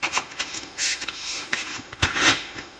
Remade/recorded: remade